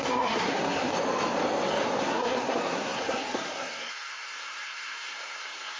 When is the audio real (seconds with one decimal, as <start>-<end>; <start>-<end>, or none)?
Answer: 0.9-2.0